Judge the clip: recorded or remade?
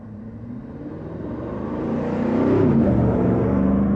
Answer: remade